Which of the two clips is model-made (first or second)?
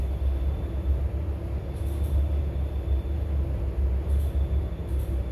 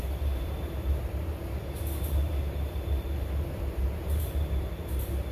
second